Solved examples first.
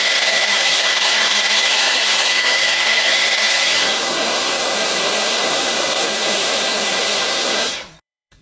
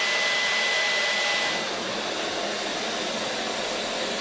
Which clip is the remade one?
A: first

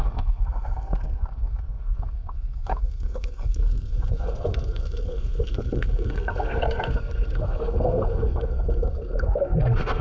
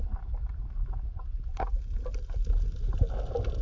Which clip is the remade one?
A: first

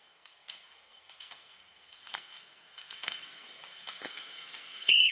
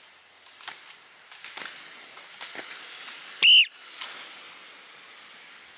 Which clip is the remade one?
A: first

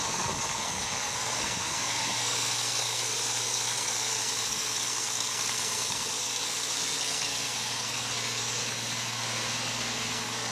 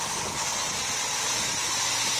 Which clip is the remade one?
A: first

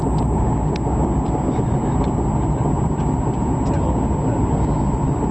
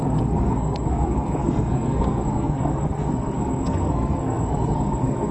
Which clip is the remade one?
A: second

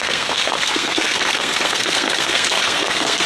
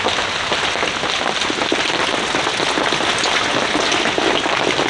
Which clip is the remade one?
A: first